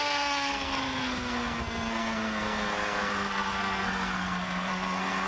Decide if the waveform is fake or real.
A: fake